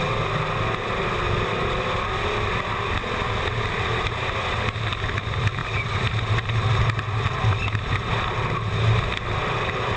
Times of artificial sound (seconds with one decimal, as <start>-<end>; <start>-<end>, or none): none